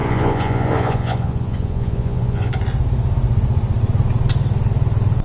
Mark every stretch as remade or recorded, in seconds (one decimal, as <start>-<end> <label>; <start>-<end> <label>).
0.0-2.5 remade; 2.5-5.2 recorded